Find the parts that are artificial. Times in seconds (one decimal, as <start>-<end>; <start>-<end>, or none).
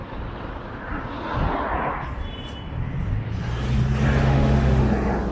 4.2-4.8